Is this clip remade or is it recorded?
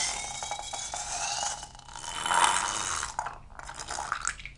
recorded